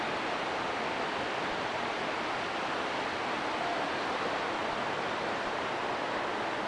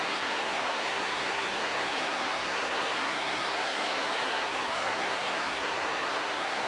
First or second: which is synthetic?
second